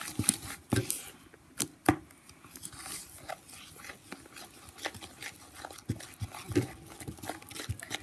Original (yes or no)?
yes